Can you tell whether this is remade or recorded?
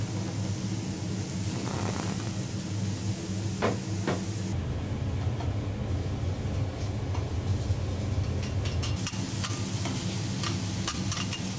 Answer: recorded